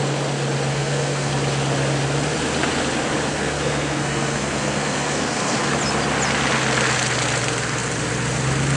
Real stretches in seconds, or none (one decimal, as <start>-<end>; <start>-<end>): 0.0-0.7; 1.3-3.3; 5.7-8.8